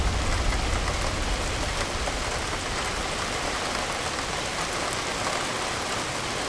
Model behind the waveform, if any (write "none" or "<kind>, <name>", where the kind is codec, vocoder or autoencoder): none